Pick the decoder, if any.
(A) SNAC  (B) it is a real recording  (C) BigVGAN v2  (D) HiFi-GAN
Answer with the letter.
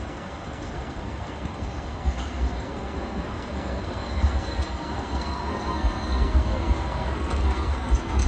A